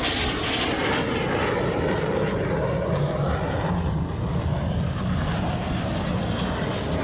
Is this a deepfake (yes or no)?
no